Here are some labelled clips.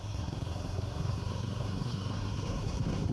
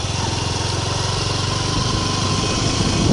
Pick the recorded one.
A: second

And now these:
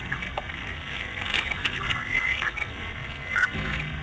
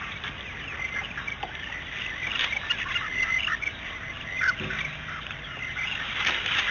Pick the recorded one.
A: second